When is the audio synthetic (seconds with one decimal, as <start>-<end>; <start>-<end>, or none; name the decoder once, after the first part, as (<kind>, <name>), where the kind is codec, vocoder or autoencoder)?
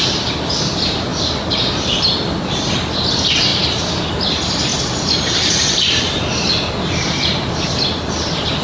none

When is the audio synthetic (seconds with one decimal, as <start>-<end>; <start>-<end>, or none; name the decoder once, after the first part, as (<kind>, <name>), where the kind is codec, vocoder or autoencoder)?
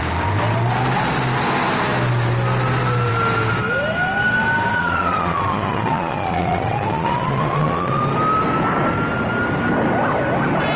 4.7-8.0 (vocoder, Vocos)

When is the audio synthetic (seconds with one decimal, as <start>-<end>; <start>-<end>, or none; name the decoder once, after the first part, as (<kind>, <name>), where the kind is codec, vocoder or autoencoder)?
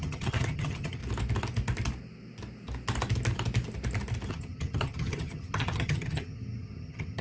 0.0-1.0 (vocoder, HiFi-GAN); 4.3-7.2